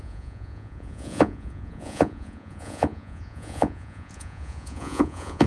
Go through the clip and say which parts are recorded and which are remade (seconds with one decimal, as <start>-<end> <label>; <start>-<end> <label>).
0.0-5.5 remade